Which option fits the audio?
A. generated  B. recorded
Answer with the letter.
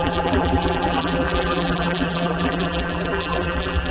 A